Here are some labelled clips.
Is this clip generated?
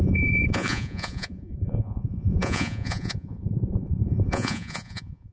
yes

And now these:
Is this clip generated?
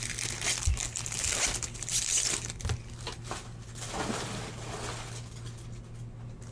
no